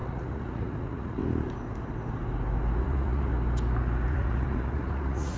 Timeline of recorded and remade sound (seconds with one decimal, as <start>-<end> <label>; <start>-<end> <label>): 0.0-1.2 remade; 1.2-2.8 recorded; 2.8-3.3 remade; 3.3-4.1 recorded; 4.1-5.4 remade